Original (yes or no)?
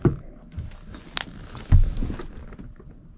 yes